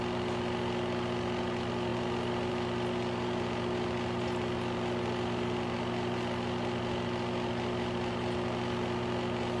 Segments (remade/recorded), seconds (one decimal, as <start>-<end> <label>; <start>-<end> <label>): 0.0-9.6 recorded